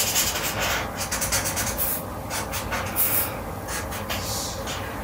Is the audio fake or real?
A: real